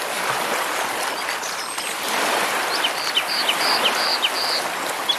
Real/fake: real